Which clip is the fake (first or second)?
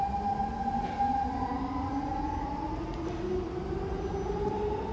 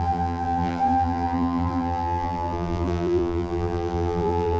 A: second